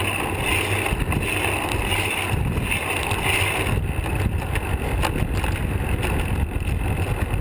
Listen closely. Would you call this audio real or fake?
real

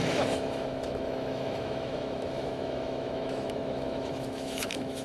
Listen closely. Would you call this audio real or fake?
fake